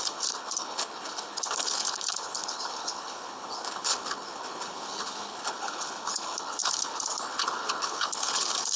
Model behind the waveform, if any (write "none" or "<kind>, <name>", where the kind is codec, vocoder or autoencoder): codec, HILCodec